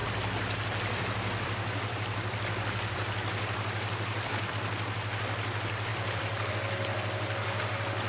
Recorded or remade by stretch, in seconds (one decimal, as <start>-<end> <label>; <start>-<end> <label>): 0.0-4.5 remade; 4.5-5.9 recorded; 5.9-6.5 remade; 6.5-8.1 recorded